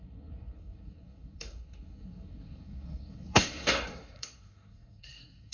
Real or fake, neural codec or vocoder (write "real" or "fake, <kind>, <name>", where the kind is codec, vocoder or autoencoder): fake, codec, SNAC